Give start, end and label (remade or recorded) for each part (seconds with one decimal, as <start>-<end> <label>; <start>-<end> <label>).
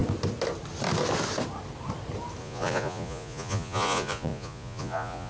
0.0-2.4 recorded; 2.4-5.3 remade